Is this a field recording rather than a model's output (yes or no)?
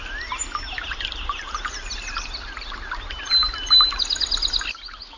yes